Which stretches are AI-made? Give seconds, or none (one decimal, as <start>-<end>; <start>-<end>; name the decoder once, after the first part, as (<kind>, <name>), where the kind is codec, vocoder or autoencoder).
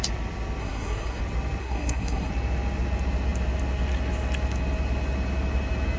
0.6-1.2 (codec, SNAC); 1.6-2.3